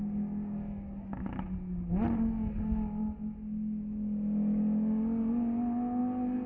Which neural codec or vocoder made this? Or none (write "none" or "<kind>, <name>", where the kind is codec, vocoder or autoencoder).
none